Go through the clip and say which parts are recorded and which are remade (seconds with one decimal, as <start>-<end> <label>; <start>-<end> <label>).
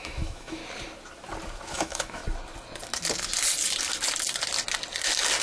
0.0-0.6 remade; 0.6-1.7 recorded; 1.7-2.2 remade; 2.2-5.4 recorded